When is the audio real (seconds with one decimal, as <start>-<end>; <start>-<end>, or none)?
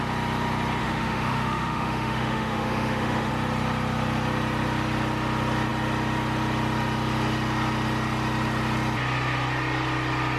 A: 0.0-0.8; 3.3-10.4